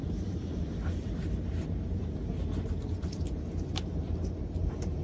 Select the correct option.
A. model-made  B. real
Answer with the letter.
A